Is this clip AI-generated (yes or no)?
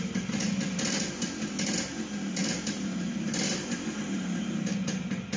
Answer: no